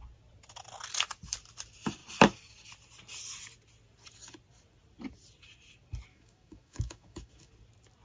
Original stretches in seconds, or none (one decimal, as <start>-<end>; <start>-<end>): 0.0-6.1; 7.5-8.0